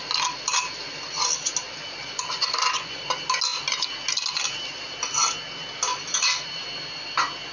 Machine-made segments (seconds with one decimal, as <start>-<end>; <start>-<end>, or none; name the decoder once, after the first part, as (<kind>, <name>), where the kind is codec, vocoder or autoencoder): 2.0-3.0 (vocoder, Vocos)